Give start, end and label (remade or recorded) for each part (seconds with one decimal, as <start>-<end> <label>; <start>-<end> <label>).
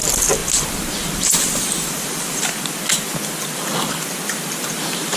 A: 0.0-5.2 recorded